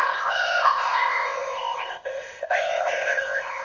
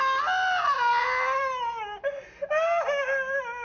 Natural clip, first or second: second